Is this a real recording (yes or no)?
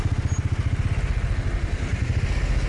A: yes